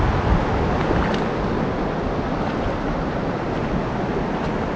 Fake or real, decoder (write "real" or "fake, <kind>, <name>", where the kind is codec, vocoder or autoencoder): real